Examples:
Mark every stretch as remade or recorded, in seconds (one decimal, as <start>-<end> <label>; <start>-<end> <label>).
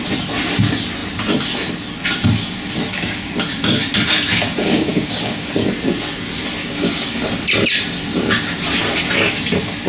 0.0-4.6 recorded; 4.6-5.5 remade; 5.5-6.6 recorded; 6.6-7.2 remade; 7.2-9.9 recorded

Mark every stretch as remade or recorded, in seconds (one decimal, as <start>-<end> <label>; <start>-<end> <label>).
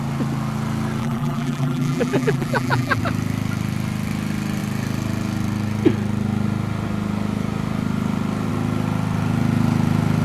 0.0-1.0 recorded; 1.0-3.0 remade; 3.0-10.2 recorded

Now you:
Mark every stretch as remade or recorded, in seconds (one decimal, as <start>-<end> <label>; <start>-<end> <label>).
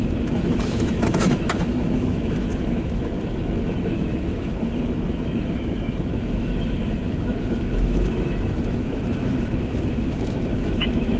0.0-11.2 remade